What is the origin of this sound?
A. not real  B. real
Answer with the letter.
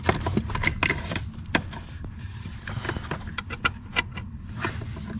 B